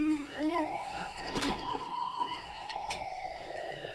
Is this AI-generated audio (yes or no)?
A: yes